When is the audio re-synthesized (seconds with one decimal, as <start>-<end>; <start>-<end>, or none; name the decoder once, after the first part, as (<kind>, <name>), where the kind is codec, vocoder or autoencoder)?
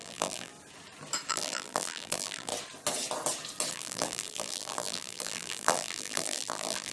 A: 0.0-0.5 (vocoder, BigVGAN v2); 1.3-2.5; 3.7-6.9